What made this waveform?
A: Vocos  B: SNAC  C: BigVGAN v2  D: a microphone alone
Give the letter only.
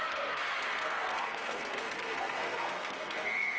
B